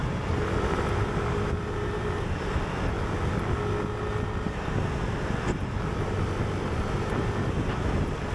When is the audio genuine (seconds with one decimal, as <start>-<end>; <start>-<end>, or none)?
0.0-8.3